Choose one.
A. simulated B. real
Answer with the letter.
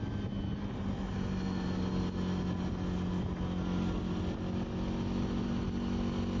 B